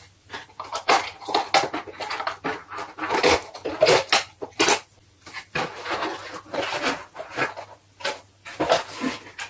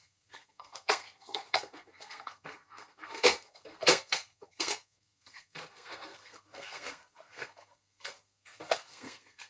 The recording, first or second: first